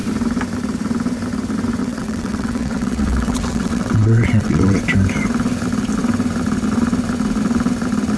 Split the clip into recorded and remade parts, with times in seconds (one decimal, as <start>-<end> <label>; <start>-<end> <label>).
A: 0.0-1.8 recorded; 1.8-4.8 remade; 4.8-8.2 recorded